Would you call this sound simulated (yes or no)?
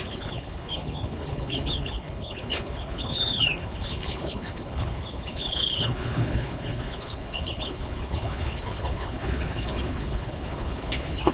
yes